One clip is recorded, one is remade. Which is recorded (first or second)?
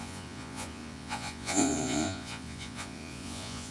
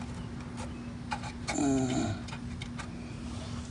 second